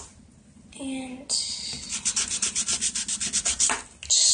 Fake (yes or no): no